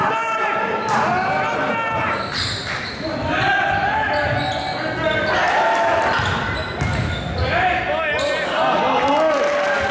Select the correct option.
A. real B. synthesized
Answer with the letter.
A